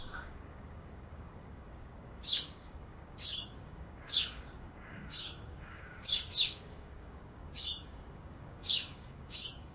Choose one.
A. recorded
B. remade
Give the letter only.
B